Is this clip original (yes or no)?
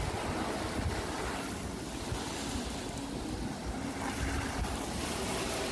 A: yes